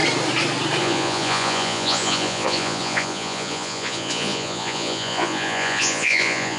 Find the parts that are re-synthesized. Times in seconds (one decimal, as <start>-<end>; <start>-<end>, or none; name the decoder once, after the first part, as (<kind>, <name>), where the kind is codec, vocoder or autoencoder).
0.8-6.6 (vocoder, Vocos)